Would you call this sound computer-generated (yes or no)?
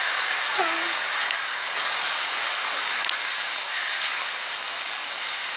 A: yes